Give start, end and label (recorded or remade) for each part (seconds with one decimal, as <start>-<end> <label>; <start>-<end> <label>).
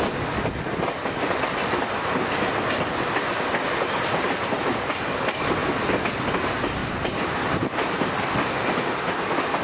0.0-9.6 recorded